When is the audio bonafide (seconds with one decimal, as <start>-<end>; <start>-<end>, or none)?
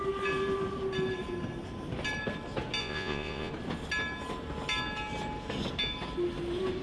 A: 0.0-2.8; 3.5-6.8